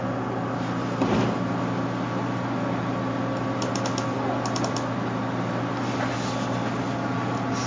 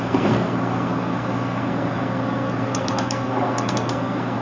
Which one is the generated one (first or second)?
second